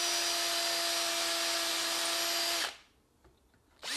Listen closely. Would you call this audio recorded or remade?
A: recorded